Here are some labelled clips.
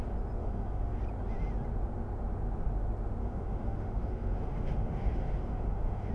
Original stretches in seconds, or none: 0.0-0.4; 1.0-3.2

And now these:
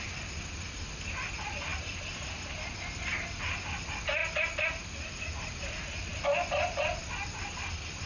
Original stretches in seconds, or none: 0.0-8.1